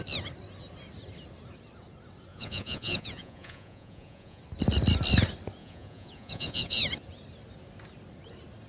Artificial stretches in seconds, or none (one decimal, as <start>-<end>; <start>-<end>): 2.3-4.4; 5.6-6.8